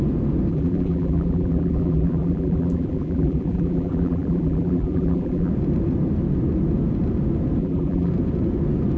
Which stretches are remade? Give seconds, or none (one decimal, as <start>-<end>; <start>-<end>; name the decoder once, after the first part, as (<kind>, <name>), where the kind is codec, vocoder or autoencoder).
0.5-5.5 (vocoder, BigVGAN v2); 7.6-8.1